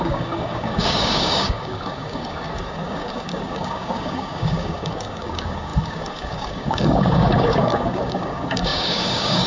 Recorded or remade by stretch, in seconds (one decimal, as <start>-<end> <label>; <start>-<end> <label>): 0.0-9.5 remade